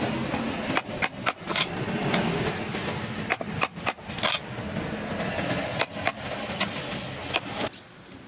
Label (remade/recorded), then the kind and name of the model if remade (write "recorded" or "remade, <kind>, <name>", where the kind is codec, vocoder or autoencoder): recorded